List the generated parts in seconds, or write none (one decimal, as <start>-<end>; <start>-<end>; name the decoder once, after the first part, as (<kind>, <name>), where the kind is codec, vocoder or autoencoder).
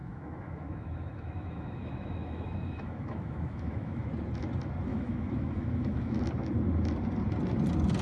0.0-4.1 (autoencoder, DAC-VAE); 4.9-6.2